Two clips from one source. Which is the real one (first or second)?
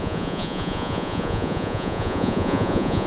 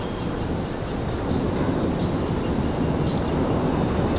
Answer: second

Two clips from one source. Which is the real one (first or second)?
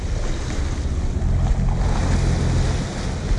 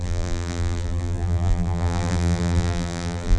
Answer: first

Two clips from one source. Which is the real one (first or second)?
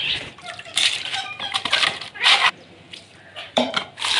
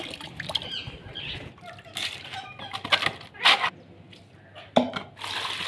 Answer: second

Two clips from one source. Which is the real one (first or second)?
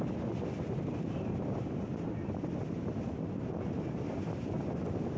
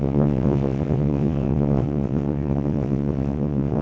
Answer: first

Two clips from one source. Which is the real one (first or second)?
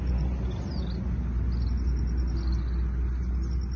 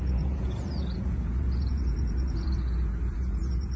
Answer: first